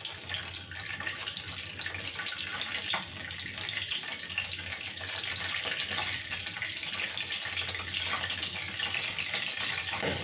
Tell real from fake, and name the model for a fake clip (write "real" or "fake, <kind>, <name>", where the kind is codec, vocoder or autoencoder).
real